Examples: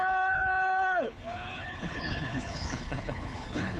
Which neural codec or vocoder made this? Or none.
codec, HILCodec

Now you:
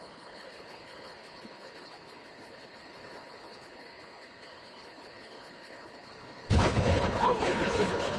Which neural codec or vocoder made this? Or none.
codec, HILCodec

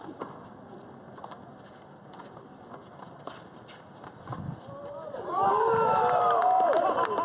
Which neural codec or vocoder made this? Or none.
none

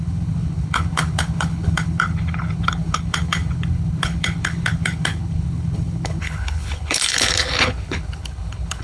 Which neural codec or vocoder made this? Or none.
codec, HILCodec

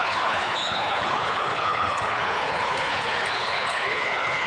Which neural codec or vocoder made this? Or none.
codec, HILCodec